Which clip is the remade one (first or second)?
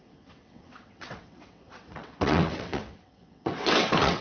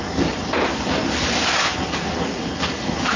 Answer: first